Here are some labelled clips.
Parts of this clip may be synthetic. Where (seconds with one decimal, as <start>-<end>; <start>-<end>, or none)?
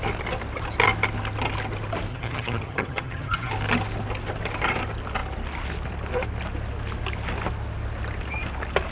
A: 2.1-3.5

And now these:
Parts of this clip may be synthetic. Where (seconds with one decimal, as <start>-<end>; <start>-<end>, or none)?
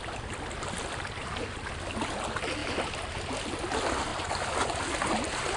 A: none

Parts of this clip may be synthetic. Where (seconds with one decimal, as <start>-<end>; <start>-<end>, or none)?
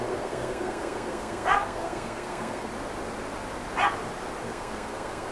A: 0.0-2.7; 4.4-5.3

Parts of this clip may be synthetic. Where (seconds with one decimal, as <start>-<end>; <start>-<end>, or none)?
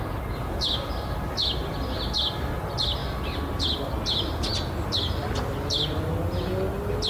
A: none